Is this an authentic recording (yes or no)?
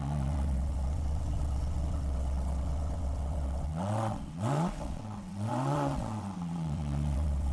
no